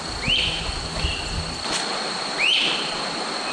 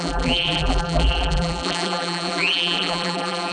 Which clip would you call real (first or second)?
first